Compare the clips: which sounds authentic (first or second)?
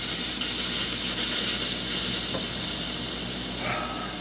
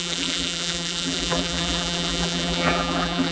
first